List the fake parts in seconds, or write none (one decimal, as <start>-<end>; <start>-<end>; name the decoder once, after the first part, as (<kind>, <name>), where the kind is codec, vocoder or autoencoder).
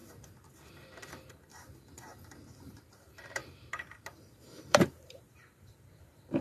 1.3-2.1 (vocoder, BigVGAN v2); 2.6-6.4